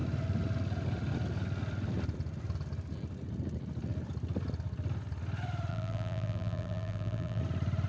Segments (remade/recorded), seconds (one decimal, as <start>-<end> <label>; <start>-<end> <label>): 0.0-5.7 recorded; 5.7-7.4 remade; 7.4-7.9 recorded